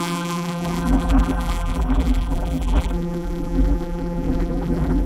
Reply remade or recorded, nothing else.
remade